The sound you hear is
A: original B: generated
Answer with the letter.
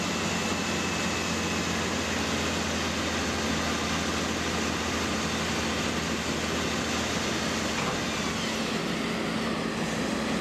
A